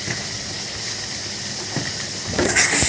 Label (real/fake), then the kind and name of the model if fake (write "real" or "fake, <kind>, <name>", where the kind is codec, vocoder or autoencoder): real